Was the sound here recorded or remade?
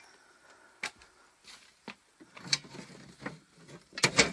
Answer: recorded